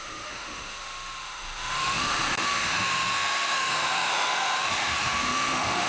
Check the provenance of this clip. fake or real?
fake